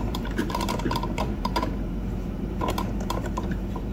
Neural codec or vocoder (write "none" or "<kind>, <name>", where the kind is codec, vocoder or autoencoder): vocoder, BigVGAN v2